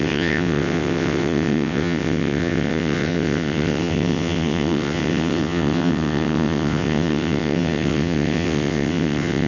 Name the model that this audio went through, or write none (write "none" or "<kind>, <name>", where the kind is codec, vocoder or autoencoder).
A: vocoder, WaveNeXt